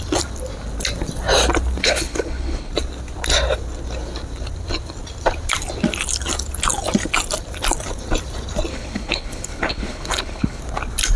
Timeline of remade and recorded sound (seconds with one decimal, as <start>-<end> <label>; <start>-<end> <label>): 0.0-1.8 recorded; 1.8-2.7 remade; 2.7-8.7 recorded; 8.7-10.6 remade; 10.6-11.2 recorded